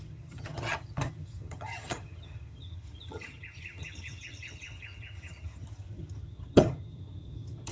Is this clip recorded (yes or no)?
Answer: no